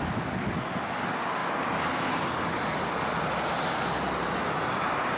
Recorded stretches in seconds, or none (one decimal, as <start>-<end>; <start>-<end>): 0.0-5.2